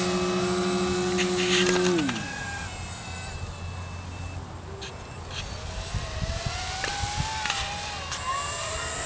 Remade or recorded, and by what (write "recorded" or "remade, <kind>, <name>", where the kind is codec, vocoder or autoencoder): recorded